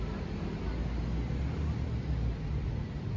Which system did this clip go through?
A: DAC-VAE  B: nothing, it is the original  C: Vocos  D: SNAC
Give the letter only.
B